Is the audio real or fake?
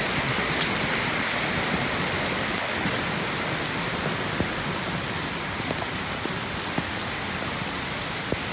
real